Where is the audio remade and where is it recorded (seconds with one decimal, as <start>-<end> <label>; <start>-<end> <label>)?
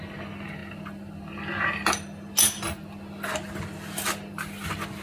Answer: 0.0-5.0 recorded